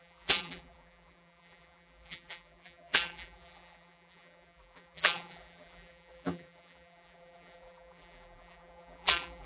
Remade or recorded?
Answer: remade